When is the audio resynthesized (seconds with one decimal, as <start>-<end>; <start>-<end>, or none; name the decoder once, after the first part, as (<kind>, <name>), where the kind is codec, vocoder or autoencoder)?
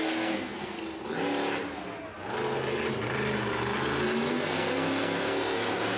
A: 0.0-0.8 (codec, SNAC); 4.3-6.0